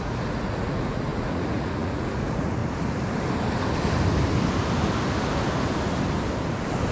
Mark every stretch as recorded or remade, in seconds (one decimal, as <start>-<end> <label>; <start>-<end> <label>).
0.0-2.6 remade; 2.6-6.9 recorded